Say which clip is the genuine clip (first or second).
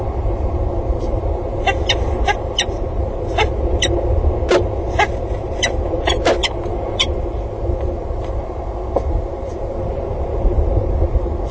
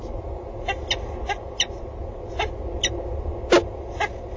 second